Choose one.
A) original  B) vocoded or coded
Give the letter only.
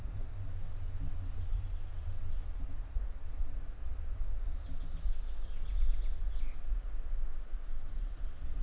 A